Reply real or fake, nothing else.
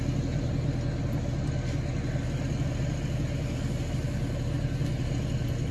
real